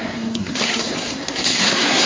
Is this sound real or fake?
fake